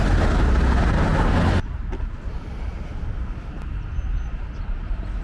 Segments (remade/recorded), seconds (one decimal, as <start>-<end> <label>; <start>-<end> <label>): 0.0-5.2 recorded

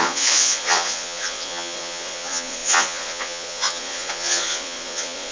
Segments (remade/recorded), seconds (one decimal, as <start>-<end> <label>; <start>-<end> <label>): 0.0-5.3 remade

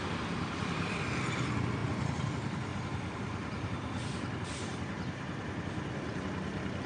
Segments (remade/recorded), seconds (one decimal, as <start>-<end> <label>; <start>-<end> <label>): 0.0-1.8 recorded; 1.8-2.3 remade; 2.3-6.9 recorded

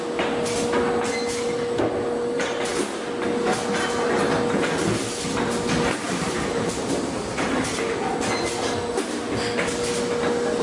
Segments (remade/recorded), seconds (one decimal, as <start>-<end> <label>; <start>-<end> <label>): 0.0-6.0 recorded; 6.0-7.8 remade; 7.8-10.6 recorded

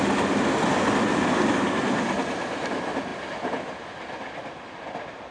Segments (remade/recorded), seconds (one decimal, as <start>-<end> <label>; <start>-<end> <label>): 0.0-5.3 recorded

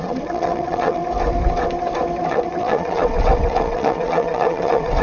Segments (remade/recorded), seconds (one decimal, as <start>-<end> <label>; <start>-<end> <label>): 0.0-1.0 remade; 1.0-2.3 recorded; 2.3-5.0 remade